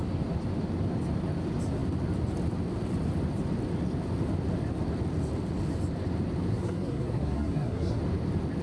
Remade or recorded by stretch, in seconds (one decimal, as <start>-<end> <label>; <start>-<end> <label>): 0.0-6.5 recorded; 6.5-8.0 remade; 8.0-8.6 recorded